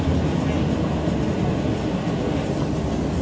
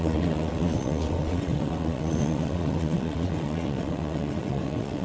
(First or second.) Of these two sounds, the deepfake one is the second